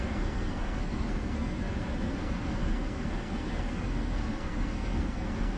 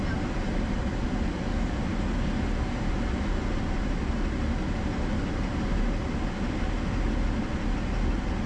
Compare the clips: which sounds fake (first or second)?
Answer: first